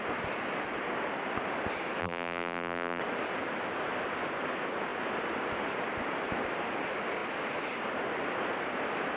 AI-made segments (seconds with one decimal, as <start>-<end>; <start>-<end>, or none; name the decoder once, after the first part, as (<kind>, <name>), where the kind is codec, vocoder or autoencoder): 2.0-3.0 (vocoder, BigVGAN v2)